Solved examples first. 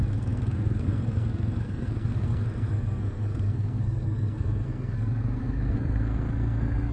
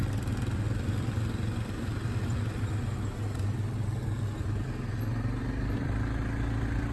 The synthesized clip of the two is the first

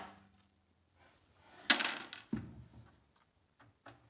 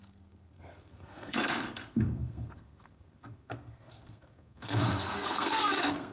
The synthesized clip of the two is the second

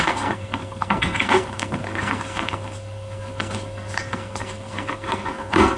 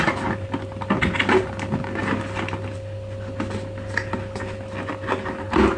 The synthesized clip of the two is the first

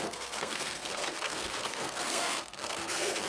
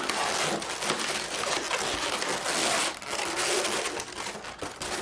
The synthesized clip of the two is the first